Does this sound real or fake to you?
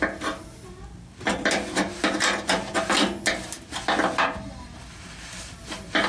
real